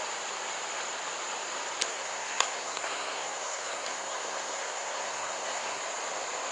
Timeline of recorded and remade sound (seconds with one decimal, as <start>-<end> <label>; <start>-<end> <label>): 0.0-1.9 recorded; 1.9-5.8 remade; 5.8-6.5 recorded